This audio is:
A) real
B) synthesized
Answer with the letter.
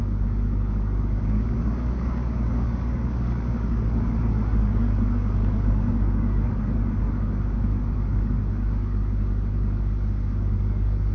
B